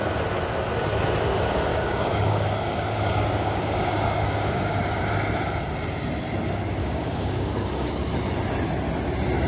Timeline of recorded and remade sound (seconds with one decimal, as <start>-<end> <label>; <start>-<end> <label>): 0.0-1.7 recorded; 1.7-5.0 remade; 5.0-6.8 recorded; 6.8-7.9 remade; 7.9-9.5 recorded